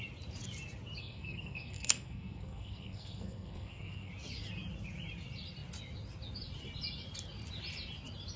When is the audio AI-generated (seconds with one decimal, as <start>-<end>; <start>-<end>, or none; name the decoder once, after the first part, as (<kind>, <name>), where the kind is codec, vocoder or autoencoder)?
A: 1.0-4.1 (codec, SNAC)